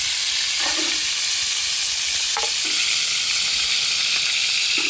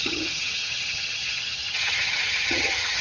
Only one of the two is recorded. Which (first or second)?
first